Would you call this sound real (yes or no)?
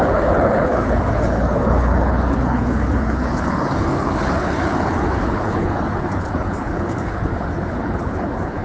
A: no